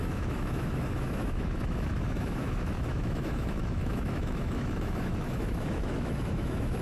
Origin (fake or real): fake